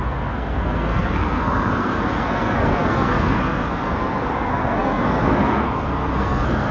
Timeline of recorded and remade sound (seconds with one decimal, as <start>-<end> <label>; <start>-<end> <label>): 0.0-6.7 remade